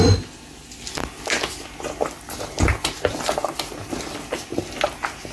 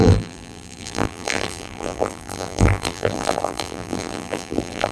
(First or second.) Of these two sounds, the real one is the first